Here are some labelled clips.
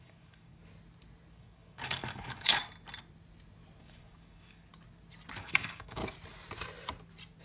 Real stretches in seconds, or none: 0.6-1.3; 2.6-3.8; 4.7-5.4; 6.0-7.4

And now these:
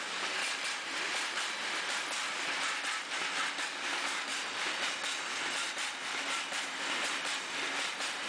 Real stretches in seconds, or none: 0.4-3.6; 4.3-8.3

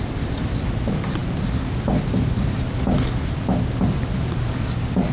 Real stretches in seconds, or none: 0.0-5.1

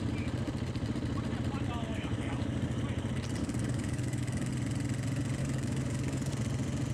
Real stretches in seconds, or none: 0.0-1.9; 2.8-3.4; 4.5-5.4; 6.3-6.9

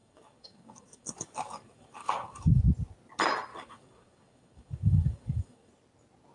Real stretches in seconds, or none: 2.6-3.5; 5.7-6.3

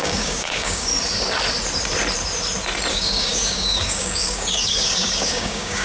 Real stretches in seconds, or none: 0.9-2.9

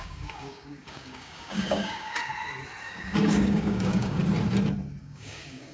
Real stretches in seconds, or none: 2.3-2.8; 4.2-5.0